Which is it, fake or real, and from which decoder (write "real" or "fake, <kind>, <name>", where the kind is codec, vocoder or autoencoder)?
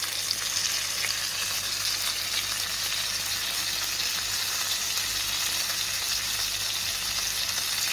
real